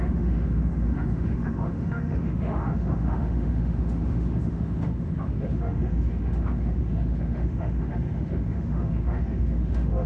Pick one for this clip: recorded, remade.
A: remade